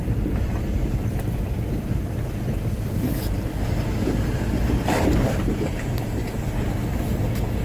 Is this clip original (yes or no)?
yes